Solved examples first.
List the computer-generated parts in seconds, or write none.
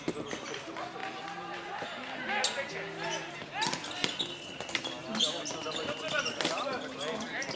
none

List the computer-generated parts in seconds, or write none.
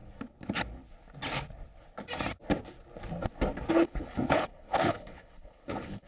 3.7-6.1 (codec, HILCodec)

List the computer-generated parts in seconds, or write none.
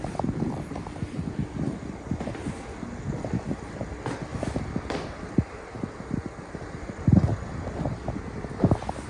none